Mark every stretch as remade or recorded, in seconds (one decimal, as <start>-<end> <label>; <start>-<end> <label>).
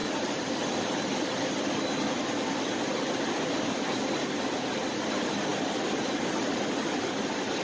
0.0-1.6 remade; 1.6-5.5 recorded; 5.5-7.0 remade; 7.0-7.6 recorded